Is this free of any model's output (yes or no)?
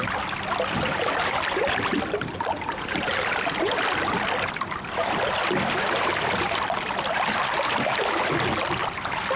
yes